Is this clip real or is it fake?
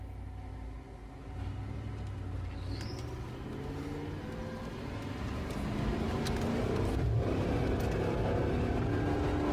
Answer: real